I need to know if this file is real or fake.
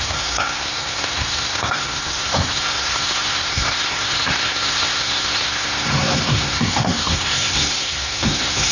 fake